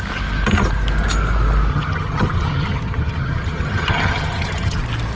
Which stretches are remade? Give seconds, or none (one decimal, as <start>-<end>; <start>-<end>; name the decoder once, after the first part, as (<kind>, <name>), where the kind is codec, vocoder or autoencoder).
1.7-4.8 (vocoder, HiFi-GAN)